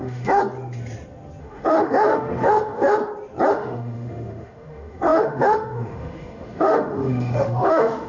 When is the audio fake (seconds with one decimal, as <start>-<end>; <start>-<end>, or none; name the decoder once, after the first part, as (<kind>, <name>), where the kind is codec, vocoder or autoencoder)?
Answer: 0.0-0.4 (autoencoder, DAC-VAE); 1.4-3.0; 3.5-8.1